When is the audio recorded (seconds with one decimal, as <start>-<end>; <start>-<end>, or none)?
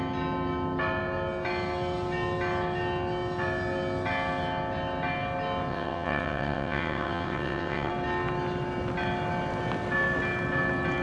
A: 0.0-5.7; 7.9-11.0